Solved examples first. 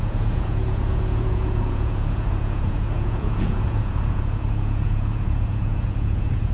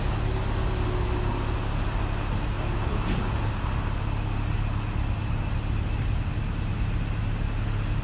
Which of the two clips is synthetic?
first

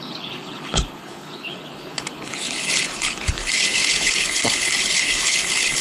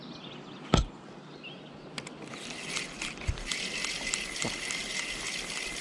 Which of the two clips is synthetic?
first